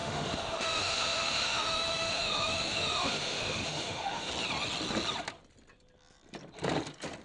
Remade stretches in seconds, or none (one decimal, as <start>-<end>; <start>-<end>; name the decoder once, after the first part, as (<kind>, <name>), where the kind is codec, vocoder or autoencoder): 0.0-4.3 (autoencoder, DAC-VAE)